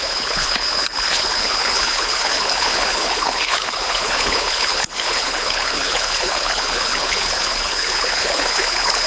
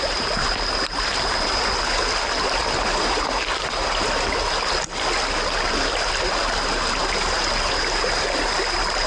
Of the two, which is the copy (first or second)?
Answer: first